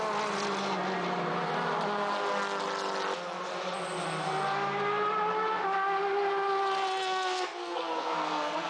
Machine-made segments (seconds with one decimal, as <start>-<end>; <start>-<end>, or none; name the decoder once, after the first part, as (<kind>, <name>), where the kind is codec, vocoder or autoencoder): 6.9-8.7 (codec, SNAC)